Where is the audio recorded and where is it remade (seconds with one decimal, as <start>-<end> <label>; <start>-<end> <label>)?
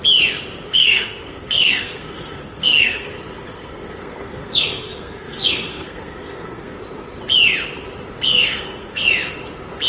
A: 0.0-0.7 recorded; 0.7-3.1 remade; 3.1-3.5 recorded; 3.5-6.8 remade; 6.8-8.3 recorded; 8.3-9.0 remade; 9.0-9.9 recorded